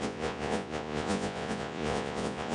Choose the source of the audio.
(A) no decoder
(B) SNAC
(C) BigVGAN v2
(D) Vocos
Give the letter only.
D